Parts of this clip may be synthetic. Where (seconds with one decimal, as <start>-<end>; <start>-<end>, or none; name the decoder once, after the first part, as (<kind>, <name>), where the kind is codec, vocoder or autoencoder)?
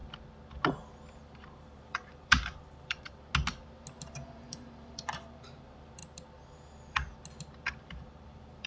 1.1-3.3 (vocoder, BigVGAN v2); 4.1-6.0; 7.8-8.7